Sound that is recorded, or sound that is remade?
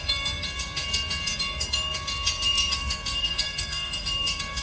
remade